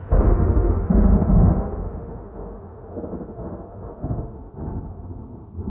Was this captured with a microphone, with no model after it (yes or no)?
no